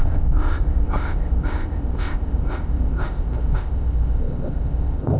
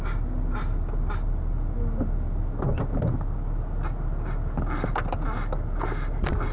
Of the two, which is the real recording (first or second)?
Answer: second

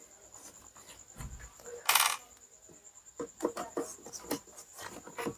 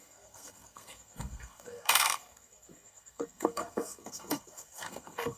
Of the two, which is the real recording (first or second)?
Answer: first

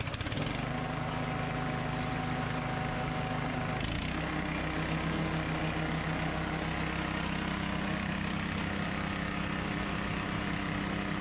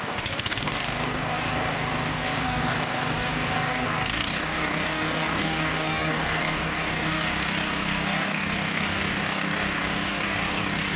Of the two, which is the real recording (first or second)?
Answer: first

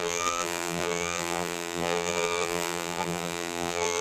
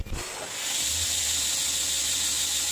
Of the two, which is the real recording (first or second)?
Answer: second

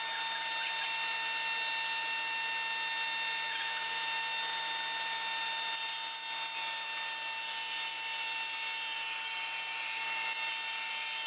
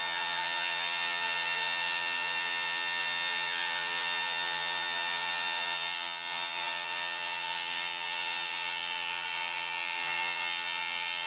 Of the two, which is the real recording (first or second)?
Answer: first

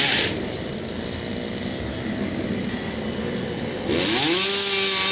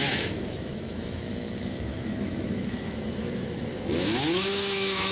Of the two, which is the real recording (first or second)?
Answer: first